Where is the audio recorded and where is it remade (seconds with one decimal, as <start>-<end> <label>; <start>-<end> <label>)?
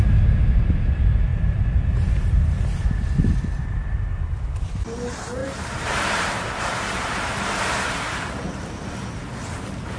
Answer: 0.0-5.4 recorded; 5.4-8.3 remade; 8.3-10.0 recorded